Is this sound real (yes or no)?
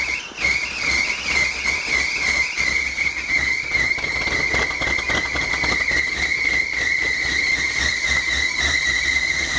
yes